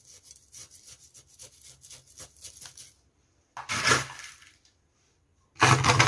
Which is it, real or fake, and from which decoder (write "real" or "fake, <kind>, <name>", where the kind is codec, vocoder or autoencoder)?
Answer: real